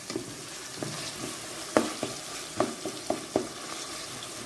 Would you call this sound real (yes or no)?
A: yes